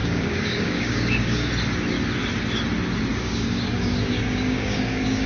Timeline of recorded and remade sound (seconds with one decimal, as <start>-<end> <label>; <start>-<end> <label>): 0.0-1.5 remade; 1.5-3.1 recorded; 3.1-5.3 remade